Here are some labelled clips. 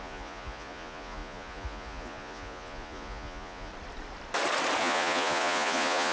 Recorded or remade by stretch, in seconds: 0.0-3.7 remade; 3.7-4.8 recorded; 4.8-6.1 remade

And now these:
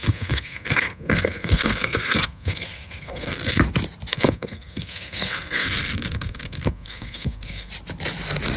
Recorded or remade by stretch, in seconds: 0.0-3.6 remade; 3.6-4.1 recorded; 4.1-7.7 remade; 7.7-8.6 recorded

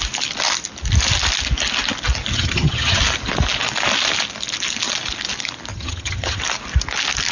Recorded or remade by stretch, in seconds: 0.0-2.3 recorded; 2.3-3.0 remade; 3.0-5.7 recorded; 5.7-6.4 remade; 6.4-7.3 recorded